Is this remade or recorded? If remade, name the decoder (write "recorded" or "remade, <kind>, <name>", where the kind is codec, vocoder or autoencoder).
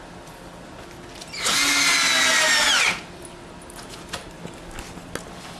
recorded